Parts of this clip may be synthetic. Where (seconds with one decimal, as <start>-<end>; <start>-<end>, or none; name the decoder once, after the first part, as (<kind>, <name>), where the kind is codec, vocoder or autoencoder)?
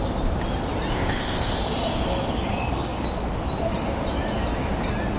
0.9-1.6 (codec, ZipCodec)